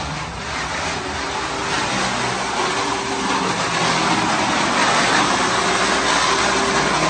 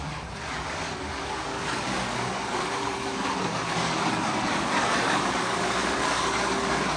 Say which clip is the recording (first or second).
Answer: first